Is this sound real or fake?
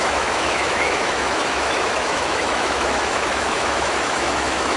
fake